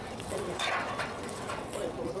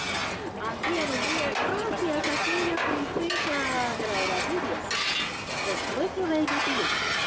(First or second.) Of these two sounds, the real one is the second